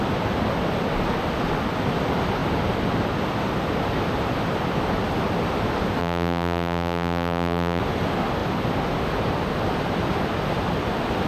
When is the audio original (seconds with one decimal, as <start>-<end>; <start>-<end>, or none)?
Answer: 0.0-6.0; 7.8-11.3